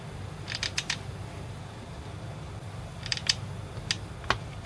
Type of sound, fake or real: real